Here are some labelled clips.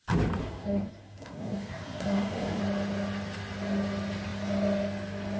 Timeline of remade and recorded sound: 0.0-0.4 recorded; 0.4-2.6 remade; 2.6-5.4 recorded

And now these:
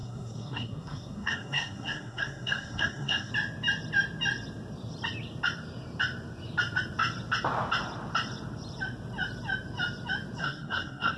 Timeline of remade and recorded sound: 0.0-3.3 remade; 3.3-10.4 recorded; 10.4-11.2 remade

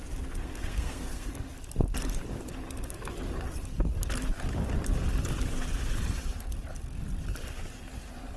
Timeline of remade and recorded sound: 0.0-0.4 recorded; 0.4-1.3 remade; 1.3-8.4 recorded

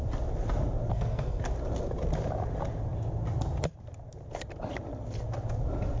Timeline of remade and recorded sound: 0.0-0.9 recorded; 0.9-1.4 remade; 1.4-6.0 recorded

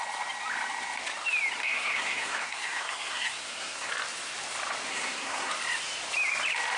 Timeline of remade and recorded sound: 0.0-1.6 recorded; 1.6-3.9 remade; 3.9-4.9 recorded; 4.9-5.5 remade; 5.5-6.8 recorded

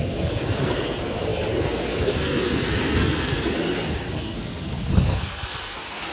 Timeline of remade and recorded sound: 0.0-6.1 remade